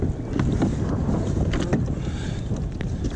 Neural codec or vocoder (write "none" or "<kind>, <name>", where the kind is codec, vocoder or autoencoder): none